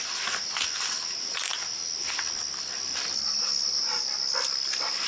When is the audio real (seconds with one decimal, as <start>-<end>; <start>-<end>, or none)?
0.0-5.1

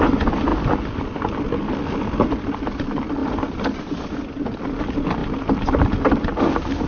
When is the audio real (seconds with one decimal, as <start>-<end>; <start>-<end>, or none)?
0.0-5.2; 6.3-6.9